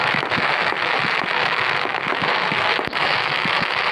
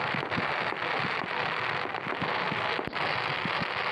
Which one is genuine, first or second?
second